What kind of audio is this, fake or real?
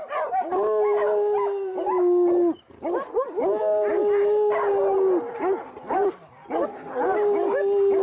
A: real